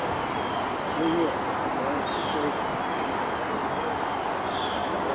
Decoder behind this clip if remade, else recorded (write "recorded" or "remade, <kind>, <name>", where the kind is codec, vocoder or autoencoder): recorded